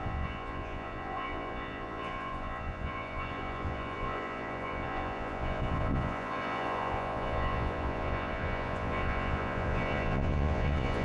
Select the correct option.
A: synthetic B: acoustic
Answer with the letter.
A